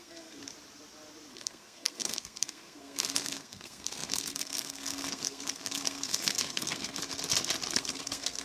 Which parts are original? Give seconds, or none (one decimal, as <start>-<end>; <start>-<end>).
0.4-1.3; 7.0-7.7